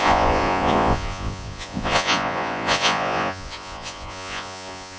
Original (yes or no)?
no